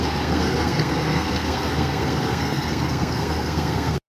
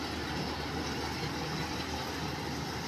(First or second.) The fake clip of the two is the first